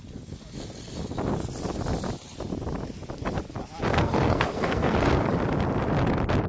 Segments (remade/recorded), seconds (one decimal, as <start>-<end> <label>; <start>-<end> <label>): 0.0-3.9 recorded; 3.9-5.3 remade; 5.3-6.5 recorded

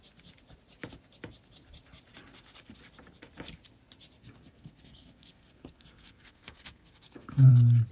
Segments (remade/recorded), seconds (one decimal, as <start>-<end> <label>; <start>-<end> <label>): 0.0-4.2 recorded; 4.2-7.5 remade; 7.5-7.9 recorded

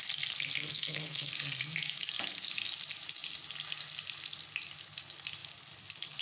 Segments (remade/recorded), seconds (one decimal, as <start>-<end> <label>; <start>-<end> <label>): 0.0-0.6 recorded; 0.6-1.3 remade; 1.3-6.2 recorded

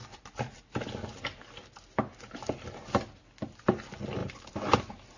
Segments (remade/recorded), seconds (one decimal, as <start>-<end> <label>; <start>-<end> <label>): 0.0-5.2 recorded

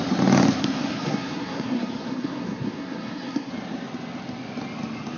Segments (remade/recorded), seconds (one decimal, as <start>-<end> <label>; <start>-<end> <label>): 0.0-0.6 recorded; 0.6-3.5 remade; 3.5-5.2 recorded

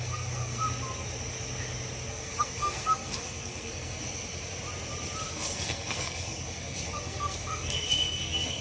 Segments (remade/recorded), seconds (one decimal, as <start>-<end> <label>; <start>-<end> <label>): 0.0-0.6 remade; 0.6-2.1 recorded; 2.1-4.0 remade; 4.0-5.3 recorded; 5.3-8.6 remade